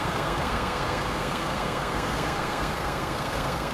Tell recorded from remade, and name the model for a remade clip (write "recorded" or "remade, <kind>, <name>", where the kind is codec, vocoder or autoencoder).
remade, codec, SNAC